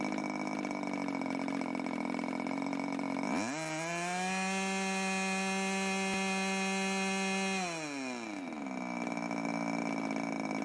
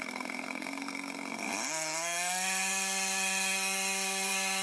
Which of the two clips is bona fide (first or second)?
first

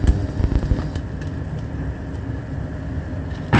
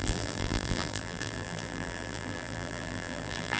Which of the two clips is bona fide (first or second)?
first